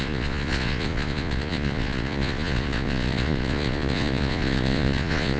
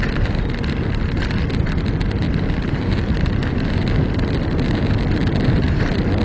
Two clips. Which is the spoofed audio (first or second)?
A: first